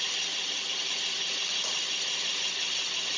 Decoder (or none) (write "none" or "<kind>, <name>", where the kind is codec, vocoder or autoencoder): none